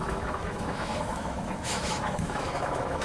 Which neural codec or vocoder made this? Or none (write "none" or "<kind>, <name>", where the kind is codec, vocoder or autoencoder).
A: autoencoder, DAC-VAE